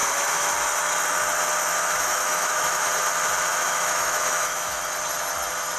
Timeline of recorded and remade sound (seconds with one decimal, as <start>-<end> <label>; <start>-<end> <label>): 0.0-0.5 remade; 0.5-1.8 recorded; 1.8-2.9 remade; 2.9-3.5 recorded; 3.5-4.8 remade; 4.8-5.8 recorded